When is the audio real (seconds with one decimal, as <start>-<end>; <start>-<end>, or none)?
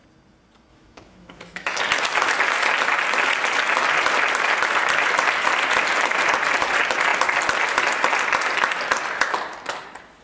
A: 0.0-0.7; 1.8-10.2